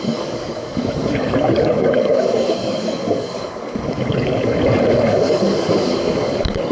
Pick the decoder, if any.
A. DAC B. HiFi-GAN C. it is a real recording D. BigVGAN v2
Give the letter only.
A